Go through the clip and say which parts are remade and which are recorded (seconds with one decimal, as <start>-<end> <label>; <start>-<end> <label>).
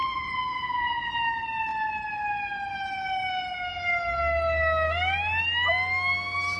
0.0-1.1 remade; 1.1-6.6 recorded